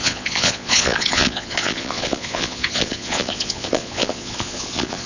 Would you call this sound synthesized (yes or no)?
yes